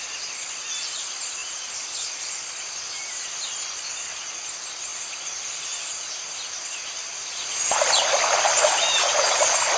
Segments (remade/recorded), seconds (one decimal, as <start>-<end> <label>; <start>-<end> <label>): 0.0-9.8 recorded